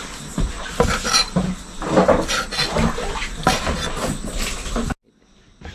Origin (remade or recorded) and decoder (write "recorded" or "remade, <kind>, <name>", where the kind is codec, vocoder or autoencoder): recorded